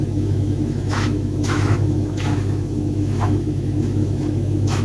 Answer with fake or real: fake